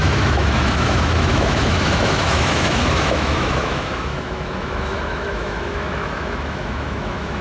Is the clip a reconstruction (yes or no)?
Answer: yes